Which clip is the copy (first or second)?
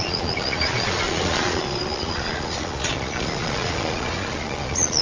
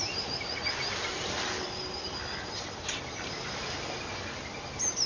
first